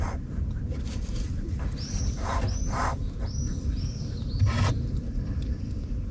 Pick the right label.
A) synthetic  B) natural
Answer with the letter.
B